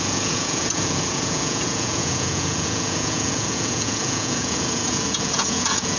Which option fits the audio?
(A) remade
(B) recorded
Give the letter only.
A